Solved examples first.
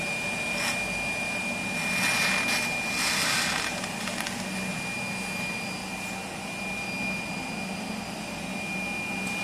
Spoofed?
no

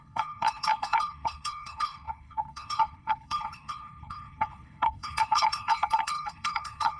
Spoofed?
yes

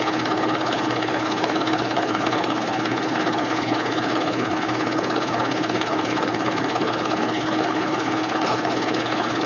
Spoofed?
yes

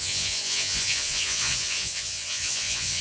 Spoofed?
yes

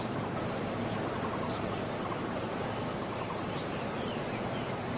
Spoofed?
yes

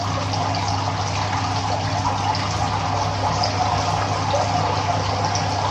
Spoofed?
no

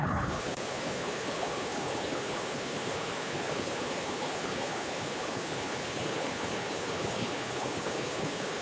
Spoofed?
yes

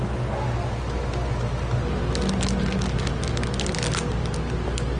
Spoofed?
no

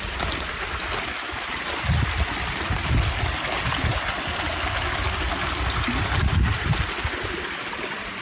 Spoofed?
no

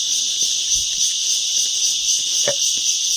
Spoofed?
yes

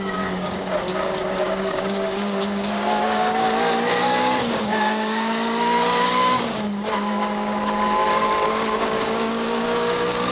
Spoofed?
yes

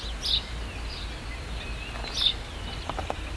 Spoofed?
no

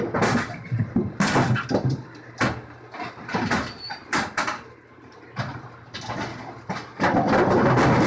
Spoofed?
no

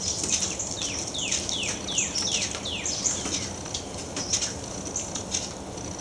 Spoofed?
no